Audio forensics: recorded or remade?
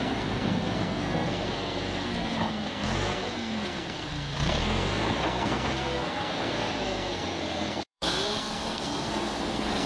remade